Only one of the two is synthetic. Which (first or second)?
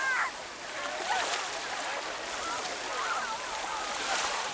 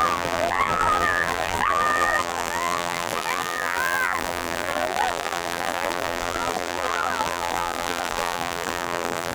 second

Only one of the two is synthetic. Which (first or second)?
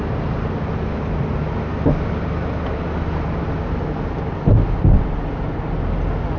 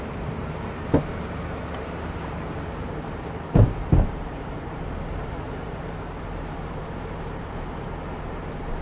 second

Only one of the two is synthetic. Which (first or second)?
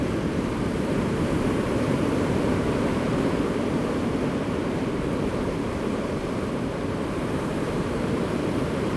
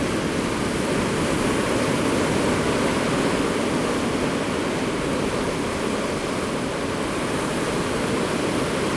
first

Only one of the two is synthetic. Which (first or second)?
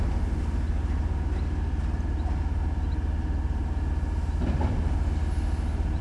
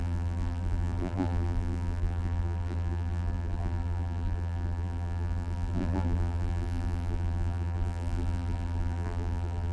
second